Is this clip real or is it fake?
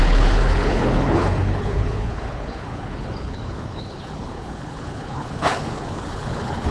fake